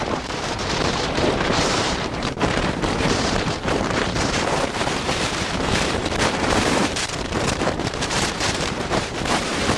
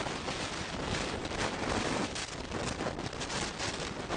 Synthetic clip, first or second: first